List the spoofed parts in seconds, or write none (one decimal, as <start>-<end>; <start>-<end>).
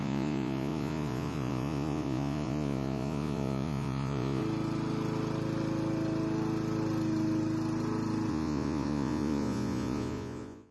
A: 0.0-4.4; 8.3-10.7